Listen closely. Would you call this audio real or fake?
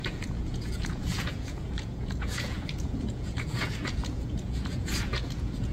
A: fake